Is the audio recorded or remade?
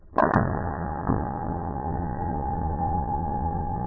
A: remade